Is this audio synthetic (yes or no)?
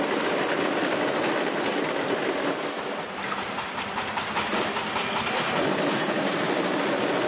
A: no